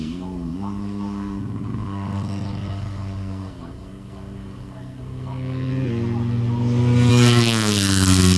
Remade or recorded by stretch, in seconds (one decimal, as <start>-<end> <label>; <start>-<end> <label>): 0.0-5.7 remade; 5.7-7.1 recorded; 7.1-8.4 remade